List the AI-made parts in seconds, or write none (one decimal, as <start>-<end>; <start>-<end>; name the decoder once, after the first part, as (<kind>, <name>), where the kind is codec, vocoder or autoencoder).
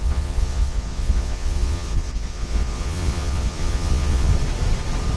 0.0-4.3 (vocoder, Vocos)